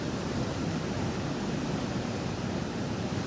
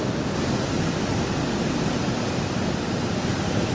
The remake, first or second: first